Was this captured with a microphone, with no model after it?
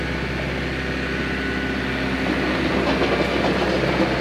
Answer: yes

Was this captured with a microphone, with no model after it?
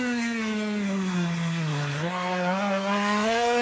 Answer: no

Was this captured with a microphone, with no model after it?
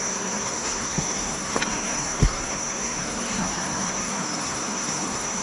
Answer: no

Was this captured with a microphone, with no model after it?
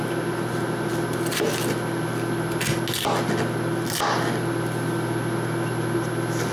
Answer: yes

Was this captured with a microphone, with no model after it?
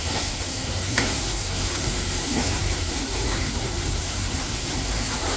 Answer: no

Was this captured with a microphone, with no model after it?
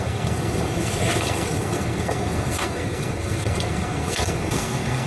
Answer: no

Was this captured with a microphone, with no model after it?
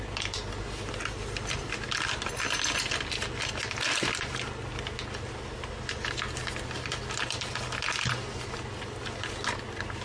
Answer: yes